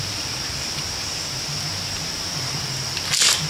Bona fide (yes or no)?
yes